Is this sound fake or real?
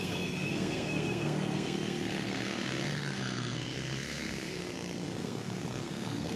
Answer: fake